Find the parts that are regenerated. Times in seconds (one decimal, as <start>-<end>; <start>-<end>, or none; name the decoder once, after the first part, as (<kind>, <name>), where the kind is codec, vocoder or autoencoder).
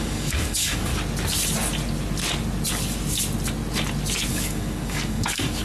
0.0-0.9 (codec, DAC); 4.3-5.6